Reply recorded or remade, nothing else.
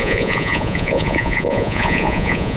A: remade